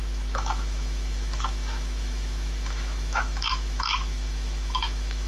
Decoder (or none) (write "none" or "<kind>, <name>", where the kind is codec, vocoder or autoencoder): autoencoder, DAC-VAE